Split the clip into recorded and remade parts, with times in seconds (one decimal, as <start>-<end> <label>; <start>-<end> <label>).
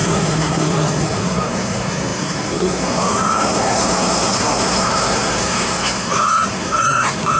0.0-7.4 remade